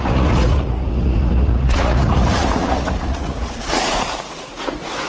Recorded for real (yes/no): no